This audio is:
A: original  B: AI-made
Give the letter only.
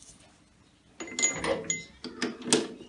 A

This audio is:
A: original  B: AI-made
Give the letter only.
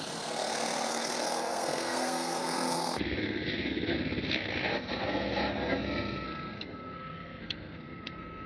B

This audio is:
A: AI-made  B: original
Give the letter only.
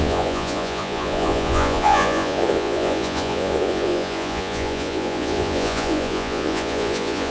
A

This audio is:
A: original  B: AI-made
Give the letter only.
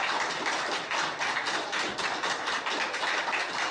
A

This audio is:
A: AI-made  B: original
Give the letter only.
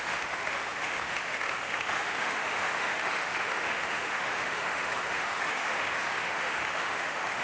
A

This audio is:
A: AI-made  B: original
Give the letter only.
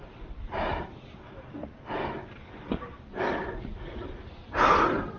B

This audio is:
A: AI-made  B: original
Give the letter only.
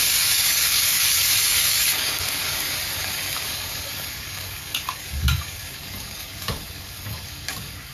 A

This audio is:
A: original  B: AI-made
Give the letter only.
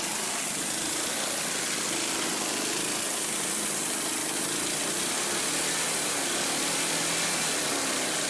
A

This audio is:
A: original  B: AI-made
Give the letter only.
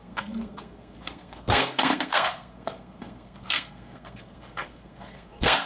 B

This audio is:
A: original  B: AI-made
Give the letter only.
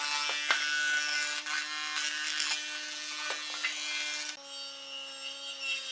A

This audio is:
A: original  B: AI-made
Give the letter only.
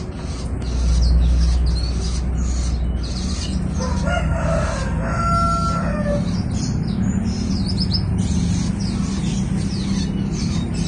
A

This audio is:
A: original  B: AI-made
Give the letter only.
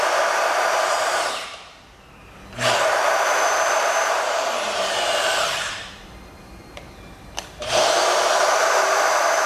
B